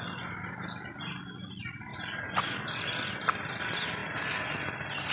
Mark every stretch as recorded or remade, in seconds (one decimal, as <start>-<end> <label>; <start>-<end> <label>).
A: 0.0-5.1 recorded